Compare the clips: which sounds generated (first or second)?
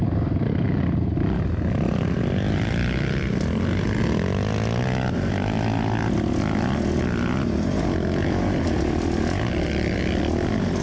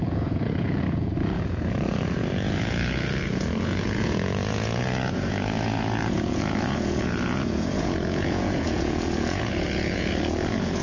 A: second